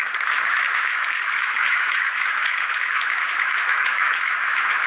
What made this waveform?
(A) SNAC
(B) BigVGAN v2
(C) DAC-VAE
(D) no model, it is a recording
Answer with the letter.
C